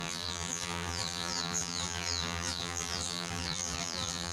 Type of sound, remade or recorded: remade